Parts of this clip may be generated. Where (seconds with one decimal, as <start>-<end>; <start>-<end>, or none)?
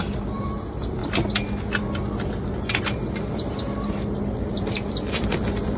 0.0-1.0; 4.4-5.8